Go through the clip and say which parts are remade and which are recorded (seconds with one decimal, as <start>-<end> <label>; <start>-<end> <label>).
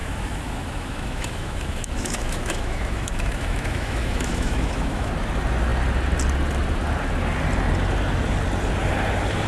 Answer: 0.0-5.1 remade; 5.1-9.5 recorded